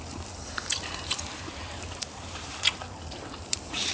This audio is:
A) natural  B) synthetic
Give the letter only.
B